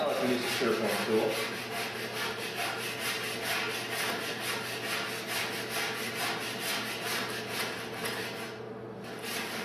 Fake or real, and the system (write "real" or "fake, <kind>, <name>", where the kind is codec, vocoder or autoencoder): real